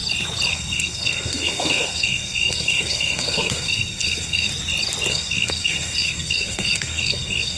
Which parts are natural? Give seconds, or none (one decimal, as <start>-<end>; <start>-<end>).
0.0-0.5; 4.5-5.1